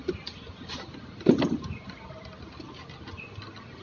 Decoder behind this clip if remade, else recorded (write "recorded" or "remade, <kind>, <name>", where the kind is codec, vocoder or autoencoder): recorded